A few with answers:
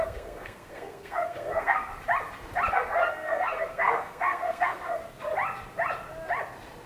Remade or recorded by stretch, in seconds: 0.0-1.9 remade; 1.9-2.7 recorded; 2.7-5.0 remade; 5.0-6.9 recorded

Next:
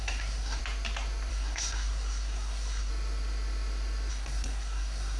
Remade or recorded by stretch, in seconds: 0.0-0.6 remade; 0.6-1.3 recorded; 1.3-2.9 remade; 2.9-4.1 recorded; 4.1-5.2 remade

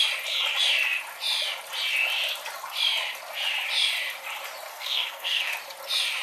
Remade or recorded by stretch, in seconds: 0.0-4.7 recorded; 4.7-5.5 remade; 5.5-6.2 recorded

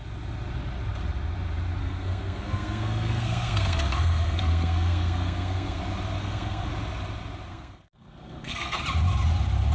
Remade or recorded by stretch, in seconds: 0.0-1.8 recorded; 1.8-5.8 remade; 5.8-6.2 recorded; 6.2-6.7 remade; 6.7-7.5 recorded; 7.5-8.8 remade; 8.8-9.7 recorded

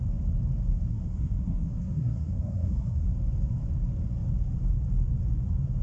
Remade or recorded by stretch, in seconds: 0.0-0.9 recorded; 0.9-3.1 remade; 3.1-5.8 recorded